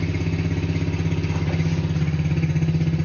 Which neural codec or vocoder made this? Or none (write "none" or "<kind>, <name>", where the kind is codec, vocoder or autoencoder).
none